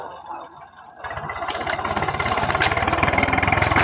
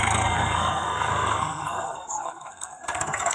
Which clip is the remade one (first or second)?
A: second